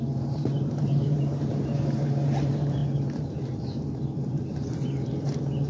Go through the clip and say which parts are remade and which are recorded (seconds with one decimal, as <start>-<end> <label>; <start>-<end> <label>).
0.0-5.7 remade